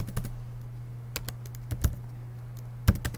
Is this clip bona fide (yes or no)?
yes